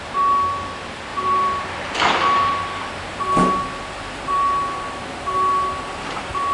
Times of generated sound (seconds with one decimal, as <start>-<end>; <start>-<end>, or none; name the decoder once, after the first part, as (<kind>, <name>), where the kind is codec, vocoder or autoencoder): 1.1-2.0 (vocoder, BigVGAN v2)